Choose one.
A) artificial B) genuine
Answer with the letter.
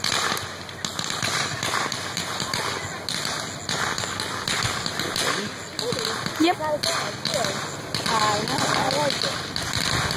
B